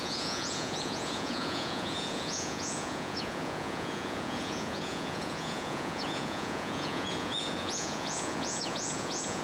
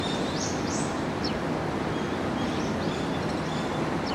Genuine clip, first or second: second